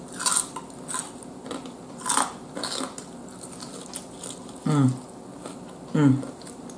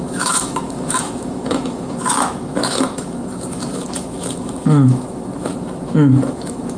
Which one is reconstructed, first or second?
second